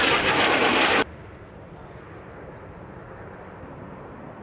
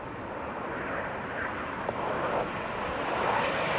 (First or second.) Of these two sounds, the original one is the second